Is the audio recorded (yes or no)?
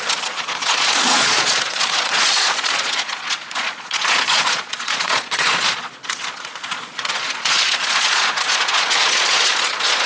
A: no